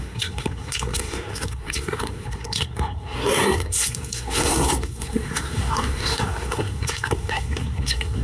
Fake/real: fake